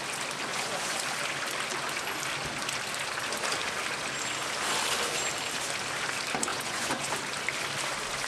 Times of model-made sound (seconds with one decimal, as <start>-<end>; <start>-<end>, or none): 0.5-1.0; 6.5-7.1